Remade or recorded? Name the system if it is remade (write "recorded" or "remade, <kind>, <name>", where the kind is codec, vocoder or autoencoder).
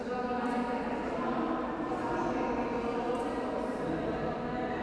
recorded